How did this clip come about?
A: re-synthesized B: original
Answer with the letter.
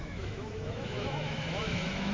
A